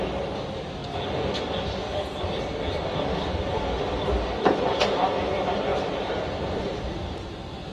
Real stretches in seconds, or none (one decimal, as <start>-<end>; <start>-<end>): 0.8-4.2